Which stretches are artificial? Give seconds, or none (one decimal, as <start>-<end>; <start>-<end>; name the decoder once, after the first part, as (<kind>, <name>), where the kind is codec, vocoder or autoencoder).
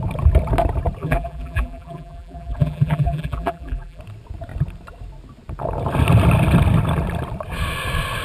1.0-4.0 (vocoder, BigVGAN v2)